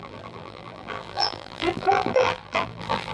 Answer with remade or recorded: remade